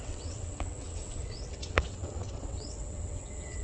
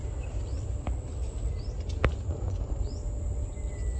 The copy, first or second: first